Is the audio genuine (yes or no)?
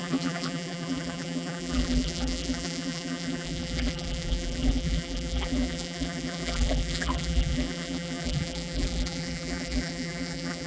no